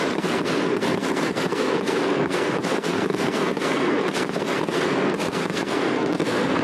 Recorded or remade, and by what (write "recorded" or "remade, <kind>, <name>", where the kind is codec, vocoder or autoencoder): remade, codec, SNAC